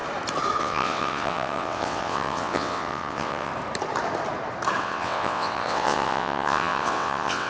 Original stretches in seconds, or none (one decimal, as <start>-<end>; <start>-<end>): 0.0-0.6; 3.5-4.8